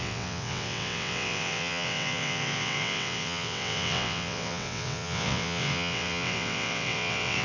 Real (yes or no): no